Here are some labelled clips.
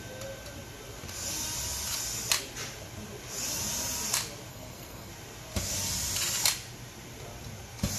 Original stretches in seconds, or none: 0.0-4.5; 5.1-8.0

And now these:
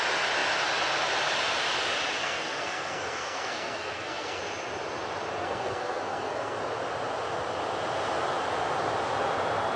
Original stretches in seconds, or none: 0.0-2.2; 4.4-5.4; 6.6-9.8